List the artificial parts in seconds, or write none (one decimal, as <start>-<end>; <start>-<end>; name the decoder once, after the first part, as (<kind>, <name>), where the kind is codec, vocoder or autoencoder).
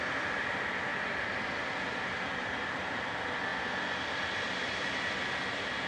none